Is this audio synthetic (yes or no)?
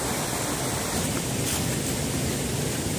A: no